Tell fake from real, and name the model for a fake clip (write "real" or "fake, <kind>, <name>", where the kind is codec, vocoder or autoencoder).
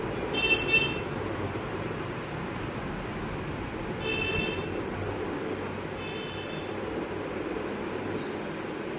real